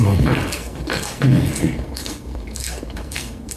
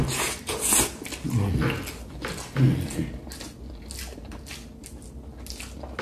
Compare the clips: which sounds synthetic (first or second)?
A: first